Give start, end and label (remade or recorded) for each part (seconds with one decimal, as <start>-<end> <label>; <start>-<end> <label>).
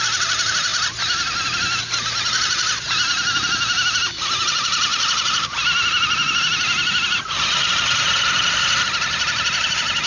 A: 0.0-10.1 recorded